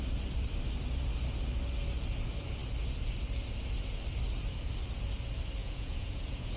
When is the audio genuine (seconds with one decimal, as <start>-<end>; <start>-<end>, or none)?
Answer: 0.0-5.6